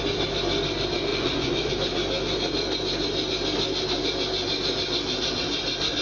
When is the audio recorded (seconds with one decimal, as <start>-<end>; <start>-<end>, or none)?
0.0-1.1; 1.7-6.0